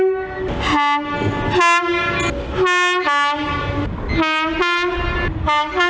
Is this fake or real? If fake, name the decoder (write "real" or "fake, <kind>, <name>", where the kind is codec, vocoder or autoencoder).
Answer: real